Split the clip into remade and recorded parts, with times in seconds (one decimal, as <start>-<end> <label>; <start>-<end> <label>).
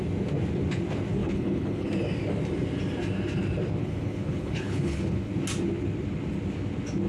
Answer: 0.0-1.2 recorded; 1.2-1.9 remade; 1.9-3.8 recorded; 3.8-5.3 remade; 5.3-7.1 recorded